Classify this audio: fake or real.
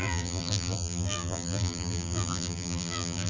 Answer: fake